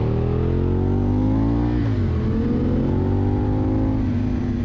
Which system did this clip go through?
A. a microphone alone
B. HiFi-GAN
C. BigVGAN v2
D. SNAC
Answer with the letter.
A